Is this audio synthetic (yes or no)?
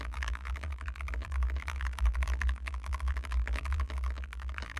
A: yes